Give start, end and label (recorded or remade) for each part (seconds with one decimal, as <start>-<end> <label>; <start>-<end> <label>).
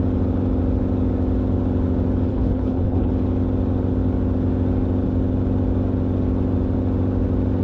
0.0-2.3 recorded; 2.3-3.1 remade; 3.1-7.6 recorded